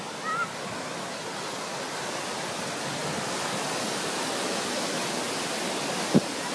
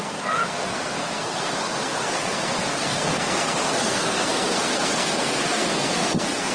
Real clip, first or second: first